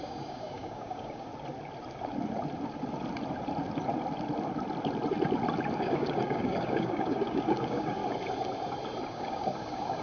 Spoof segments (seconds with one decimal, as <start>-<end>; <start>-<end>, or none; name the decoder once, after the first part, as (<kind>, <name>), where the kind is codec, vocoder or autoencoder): 0.0-1.3 (codec, DAC); 5.7-8.0; 9.1-10.0